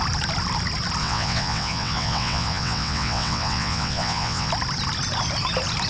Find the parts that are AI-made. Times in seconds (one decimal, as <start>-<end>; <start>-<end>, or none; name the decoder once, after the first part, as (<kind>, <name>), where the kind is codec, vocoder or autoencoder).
1.0-4.5 (vocoder, WaveNeXt)